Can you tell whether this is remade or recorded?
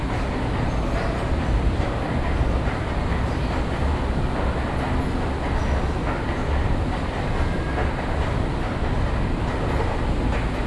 recorded